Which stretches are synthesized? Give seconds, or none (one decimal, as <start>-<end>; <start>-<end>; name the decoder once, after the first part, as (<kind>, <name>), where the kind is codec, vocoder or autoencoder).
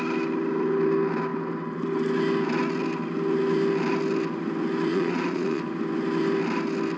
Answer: 4.9-5.6 (vocoder, Vocos)